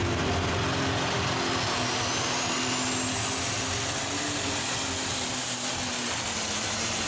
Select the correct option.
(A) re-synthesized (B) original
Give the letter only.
B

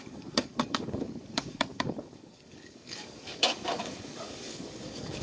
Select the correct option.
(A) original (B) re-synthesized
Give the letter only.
B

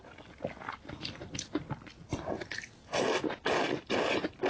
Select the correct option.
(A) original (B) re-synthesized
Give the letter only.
A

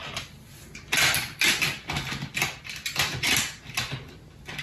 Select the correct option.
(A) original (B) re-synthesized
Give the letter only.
A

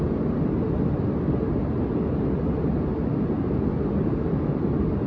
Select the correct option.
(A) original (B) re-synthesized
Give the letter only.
A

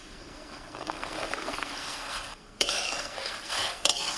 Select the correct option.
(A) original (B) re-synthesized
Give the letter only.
B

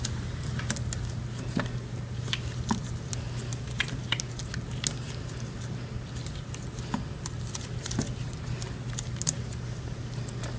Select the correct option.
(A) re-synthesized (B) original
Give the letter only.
B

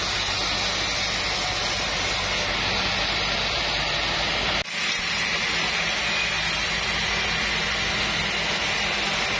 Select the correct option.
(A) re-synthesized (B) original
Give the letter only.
B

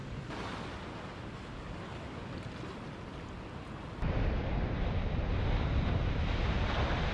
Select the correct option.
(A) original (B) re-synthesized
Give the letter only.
A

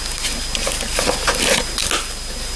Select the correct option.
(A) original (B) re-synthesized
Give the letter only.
A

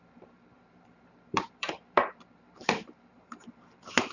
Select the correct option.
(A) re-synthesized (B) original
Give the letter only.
A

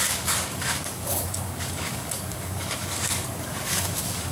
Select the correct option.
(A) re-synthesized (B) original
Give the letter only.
A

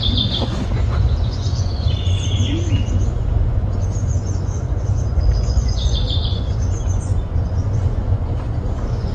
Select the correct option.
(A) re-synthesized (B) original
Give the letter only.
A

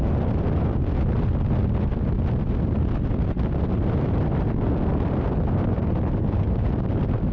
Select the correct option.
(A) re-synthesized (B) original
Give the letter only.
B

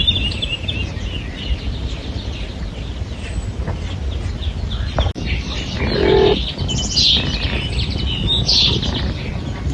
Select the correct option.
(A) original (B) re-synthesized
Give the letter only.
A